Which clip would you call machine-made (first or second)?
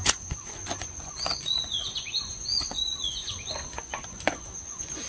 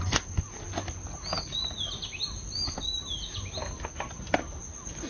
first